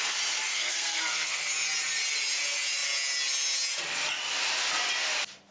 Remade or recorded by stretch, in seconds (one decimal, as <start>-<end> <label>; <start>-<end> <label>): 0.0-0.5 recorded; 0.5-1.4 remade; 1.4-5.5 recorded

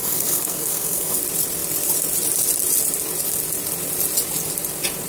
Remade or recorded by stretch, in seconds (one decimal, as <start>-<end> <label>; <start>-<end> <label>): 0.0-1.2 remade; 1.2-5.1 recorded

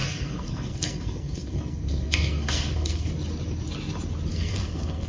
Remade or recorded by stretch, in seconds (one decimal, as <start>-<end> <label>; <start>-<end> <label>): 0.0-3.1 remade; 3.1-4.3 recorded; 4.3-5.1 remade

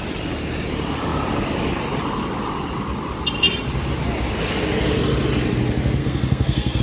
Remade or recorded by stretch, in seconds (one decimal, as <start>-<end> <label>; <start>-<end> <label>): 0.0-6.0 recorded; 6.0-6.8 remade

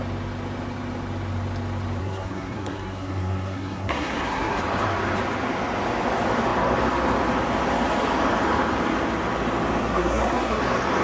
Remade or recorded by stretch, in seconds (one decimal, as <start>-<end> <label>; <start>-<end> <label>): 0.0-2.0 recorded; 2.0-4.6 remade; 4.6-9.8 recorded; 9.8-10.6 remade; 10.6-11.0 recorded

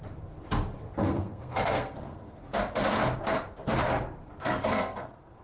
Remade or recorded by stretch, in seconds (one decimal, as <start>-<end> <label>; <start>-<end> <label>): 0.0-1.0 recorded; 1.0-2.5 remade; 2.5-4.4 recorded; 4.4-5.4 remade

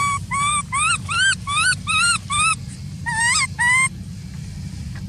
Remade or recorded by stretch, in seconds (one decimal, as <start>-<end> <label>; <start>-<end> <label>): 0.0-5.1 recorded

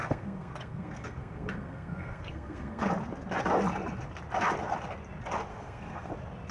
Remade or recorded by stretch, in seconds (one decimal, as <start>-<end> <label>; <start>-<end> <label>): 0.0-2.9 remade; 2.9-5.5 recorded; 5.5-6.1 remade; 6.1-6.5 recorded